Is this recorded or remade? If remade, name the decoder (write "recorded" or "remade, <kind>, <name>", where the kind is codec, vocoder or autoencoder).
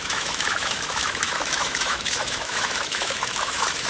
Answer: remade, autoencoder, DAC-VAE